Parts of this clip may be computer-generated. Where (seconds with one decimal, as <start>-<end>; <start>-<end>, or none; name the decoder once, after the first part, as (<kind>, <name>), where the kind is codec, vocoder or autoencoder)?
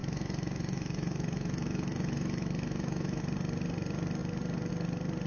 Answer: 0.0-3.2 (autoencoder, DAC-VAE)